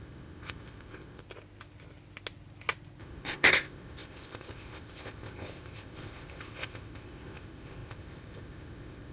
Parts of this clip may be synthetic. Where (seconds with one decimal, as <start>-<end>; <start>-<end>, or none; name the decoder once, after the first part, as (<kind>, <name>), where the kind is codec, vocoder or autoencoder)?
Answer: 0.0-1.2 (codec, ZipCodec); 3.0-9.1